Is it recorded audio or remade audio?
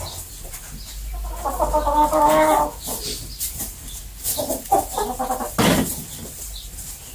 recorded